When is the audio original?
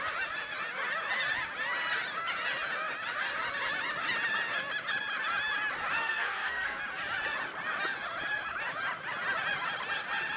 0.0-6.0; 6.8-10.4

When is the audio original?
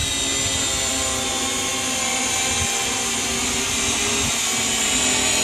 0.0-5.4